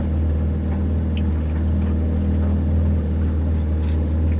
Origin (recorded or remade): recorded